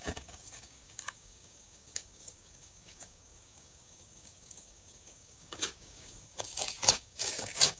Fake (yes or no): yes